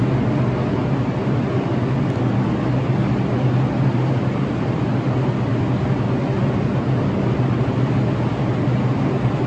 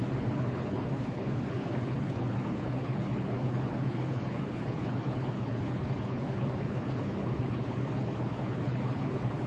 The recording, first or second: first